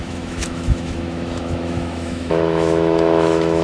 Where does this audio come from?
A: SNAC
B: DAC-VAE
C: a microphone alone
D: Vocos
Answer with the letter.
B